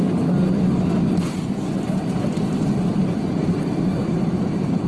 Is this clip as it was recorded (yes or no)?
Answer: yes